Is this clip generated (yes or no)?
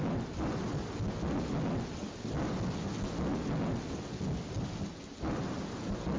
no